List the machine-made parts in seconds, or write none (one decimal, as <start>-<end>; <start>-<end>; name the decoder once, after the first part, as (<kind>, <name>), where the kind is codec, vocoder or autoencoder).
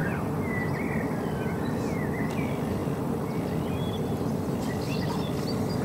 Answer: none